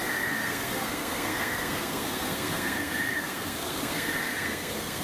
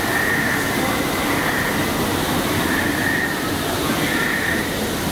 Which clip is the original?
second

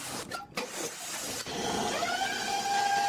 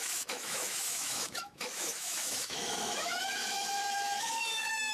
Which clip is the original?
first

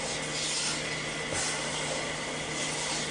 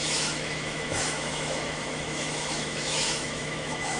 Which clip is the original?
first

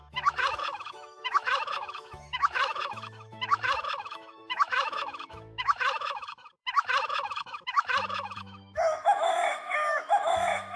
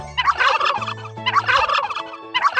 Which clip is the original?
second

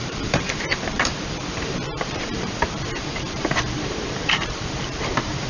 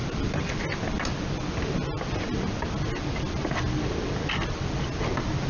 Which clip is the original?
second